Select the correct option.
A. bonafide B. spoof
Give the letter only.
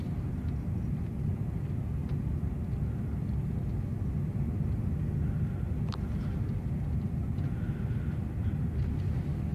A